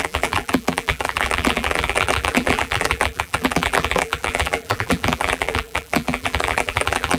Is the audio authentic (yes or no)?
no